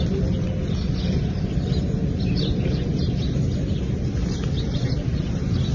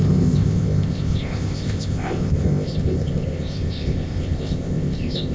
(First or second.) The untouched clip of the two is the first